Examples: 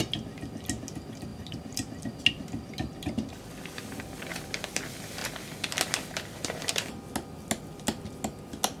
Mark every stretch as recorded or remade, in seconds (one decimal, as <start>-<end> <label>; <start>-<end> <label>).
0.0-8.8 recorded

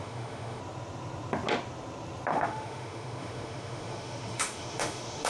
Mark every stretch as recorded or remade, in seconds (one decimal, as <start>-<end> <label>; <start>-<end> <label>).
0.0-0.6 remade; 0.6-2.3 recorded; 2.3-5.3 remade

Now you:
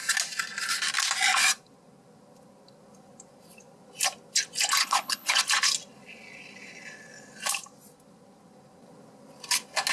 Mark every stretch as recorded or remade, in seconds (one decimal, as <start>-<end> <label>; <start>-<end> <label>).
0.0-4.8 recorded; 4.8-5.4 remade; 5.4-9.9 recorded

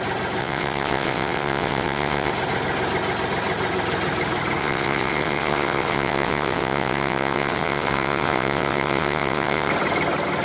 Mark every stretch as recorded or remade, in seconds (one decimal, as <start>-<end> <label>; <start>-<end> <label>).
0.0-0.4 recorded; 0.4-2.3 remade; 2.3-4.6 recorded; 4.6-9.7 remade; 9.7-10.4 recorded

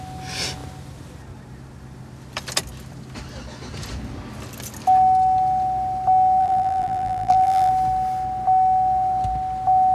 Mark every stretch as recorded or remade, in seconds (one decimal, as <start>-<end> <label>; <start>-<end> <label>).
0.0-6.4 recorded; 6.4-7.7 remade; 7.7-9.9 recorded

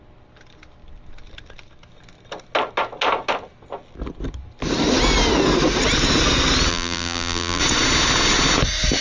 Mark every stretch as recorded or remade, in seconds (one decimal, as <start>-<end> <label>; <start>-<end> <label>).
0.0-6.7 recorded; 6.7-7.6 remade; 7.6-9.0 recorded